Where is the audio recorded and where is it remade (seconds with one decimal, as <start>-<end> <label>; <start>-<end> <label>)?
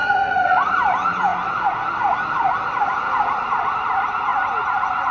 0.0-0.7 remade; 0.7-5.1 recorded